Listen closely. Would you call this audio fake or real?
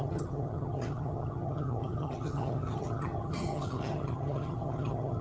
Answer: fake